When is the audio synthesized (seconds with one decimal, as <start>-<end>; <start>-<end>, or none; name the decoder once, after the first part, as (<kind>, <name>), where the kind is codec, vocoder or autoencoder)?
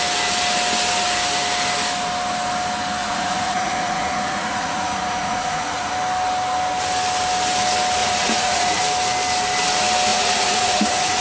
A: 3.0-5.9 (vocoder, Vocos); 8.0-8.8; 10.1-11.2